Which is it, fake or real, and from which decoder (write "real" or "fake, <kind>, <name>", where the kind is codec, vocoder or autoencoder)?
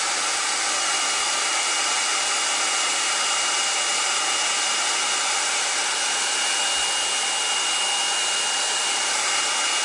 real